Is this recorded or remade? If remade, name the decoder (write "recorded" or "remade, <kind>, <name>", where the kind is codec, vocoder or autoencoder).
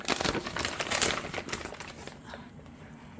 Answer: recorded